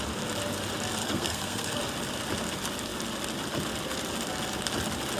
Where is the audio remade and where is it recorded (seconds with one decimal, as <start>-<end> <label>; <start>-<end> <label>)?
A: 0.0-1.0 recorded; 1.0-1.8 remade; 1.8-5.2 recorded